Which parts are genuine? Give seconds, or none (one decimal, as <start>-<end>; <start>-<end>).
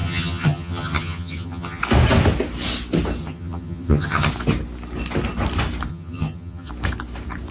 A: 1.8-3.2; 4.3-5.9; 6.7-7.5